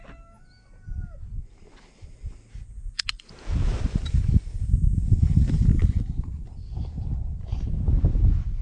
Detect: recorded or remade recorded